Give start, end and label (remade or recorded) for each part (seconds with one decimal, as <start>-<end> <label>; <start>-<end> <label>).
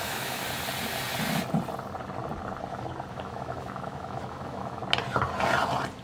0.0-0.4 remade; 0.4-3.1 recorded; 3.1-4.8 remade; 4.8-6.0 recorded